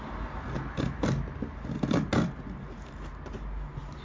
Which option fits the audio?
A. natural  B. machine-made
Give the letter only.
A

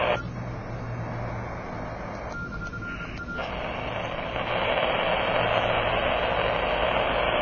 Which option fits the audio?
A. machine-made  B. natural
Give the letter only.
B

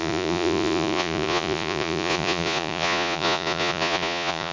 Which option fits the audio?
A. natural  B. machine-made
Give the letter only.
B